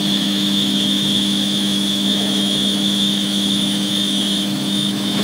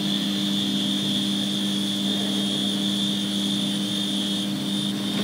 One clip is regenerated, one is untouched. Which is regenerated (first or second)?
first